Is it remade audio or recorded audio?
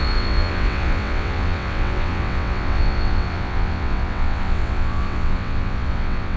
remade